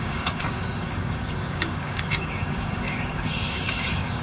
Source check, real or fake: fake